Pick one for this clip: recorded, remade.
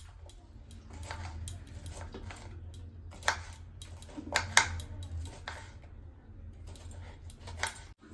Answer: recorded